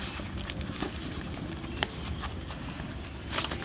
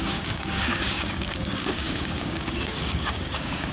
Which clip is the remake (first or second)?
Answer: second